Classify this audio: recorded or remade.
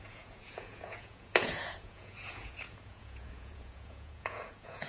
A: remade